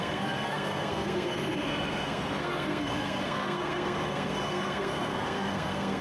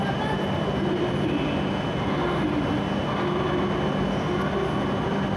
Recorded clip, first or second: second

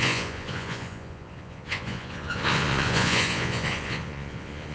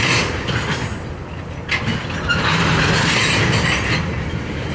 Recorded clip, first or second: second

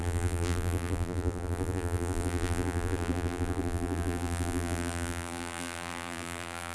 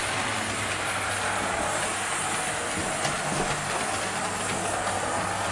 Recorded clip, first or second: second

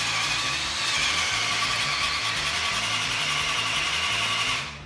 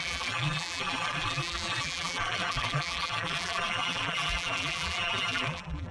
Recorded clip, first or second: first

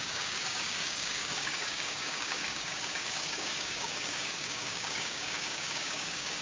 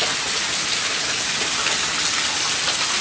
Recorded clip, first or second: second